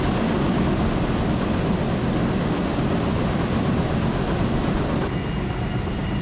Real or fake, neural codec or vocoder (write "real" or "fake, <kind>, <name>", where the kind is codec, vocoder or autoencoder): real